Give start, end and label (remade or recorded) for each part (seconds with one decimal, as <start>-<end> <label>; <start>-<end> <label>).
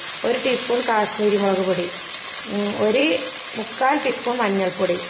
0.0-5.1 recorded